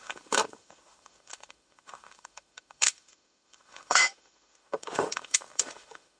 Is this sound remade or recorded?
remade